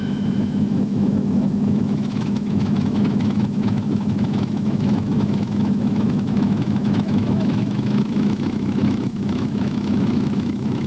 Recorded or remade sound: remade